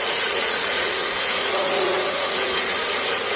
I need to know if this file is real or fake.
fake